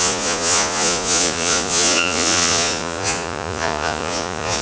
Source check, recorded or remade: remade